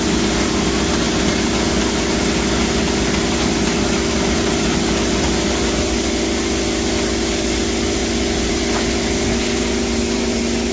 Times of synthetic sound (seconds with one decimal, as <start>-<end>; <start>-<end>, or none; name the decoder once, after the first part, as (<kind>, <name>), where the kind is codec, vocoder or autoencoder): none